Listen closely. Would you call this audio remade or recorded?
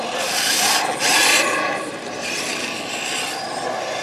recorded